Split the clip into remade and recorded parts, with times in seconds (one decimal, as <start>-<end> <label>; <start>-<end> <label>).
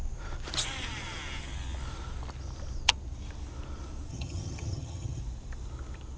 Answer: 0.0-4.1 recorded; 4.1-5.2 remade; 5.2-6.2 recorded